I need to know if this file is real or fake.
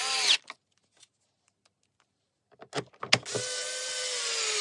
real